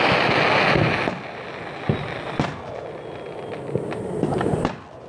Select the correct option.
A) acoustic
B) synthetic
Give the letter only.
A